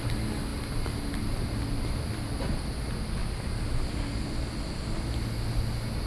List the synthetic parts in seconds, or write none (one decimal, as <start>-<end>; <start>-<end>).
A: none